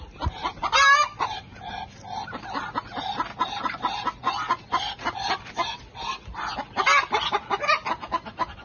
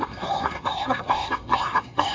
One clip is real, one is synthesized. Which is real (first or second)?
first